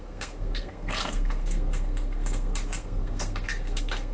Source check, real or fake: fake